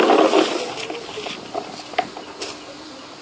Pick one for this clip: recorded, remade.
recorded